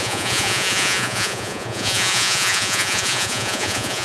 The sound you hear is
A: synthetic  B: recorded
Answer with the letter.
A